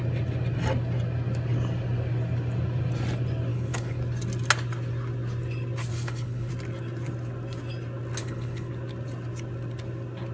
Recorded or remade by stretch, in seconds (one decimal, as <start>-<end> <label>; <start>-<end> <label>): 0.0-3.5 recorded; 3.5-4.0 remade; 4.0-5.9 recorded; 5.9-6.5 remade; 6.5-8.2 recorded; 8.2-8.7 remade; 8.7-10.3 recorded